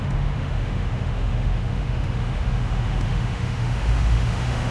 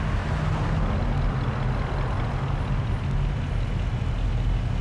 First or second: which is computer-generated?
first